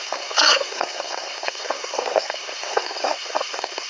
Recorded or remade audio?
remade